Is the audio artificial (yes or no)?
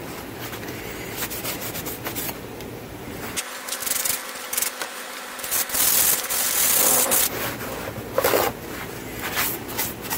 no